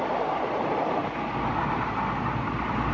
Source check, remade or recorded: recorded